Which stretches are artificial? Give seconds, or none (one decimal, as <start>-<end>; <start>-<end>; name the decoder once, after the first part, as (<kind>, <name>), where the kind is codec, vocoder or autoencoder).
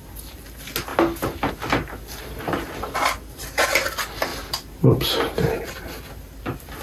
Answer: 4.3-6.1 (vocoder, BigVGAN v2)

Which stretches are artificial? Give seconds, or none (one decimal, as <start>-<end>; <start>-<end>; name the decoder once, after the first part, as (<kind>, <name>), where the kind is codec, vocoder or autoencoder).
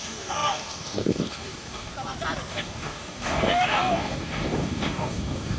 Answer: 0.0-1.9 (codec, DAC); 2.5-5.6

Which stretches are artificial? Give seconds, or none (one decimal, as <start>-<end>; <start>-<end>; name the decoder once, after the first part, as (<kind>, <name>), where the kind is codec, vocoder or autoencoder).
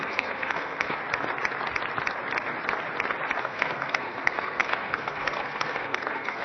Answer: 0.0-1.0 (codec, SNAC); 3.4-6.4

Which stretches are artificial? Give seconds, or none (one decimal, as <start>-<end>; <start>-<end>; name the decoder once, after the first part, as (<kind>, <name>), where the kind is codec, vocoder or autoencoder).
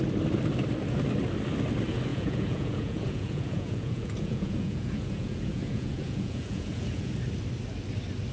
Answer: 2.1-7.1 (vocoder, Vocos)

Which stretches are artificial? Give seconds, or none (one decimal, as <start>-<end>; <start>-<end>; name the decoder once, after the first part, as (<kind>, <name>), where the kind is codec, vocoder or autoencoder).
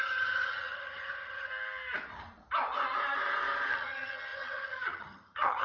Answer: 0.0-1.5 (vocoder, HiFi-GAN); 3.7-5.6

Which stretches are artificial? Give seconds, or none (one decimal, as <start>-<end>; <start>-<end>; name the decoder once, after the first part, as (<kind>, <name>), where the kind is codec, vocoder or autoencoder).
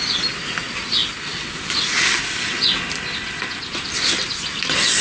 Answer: none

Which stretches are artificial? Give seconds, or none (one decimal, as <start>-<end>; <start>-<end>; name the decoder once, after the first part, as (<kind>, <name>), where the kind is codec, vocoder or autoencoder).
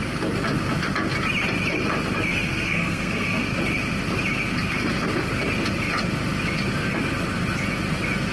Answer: 2.3-3.4 (codec, SNAC)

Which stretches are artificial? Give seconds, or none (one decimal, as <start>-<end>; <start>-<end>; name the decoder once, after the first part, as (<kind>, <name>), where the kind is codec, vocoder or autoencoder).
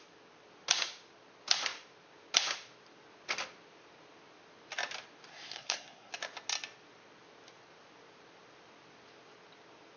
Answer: 5.3-6.1 (codec, SNAC)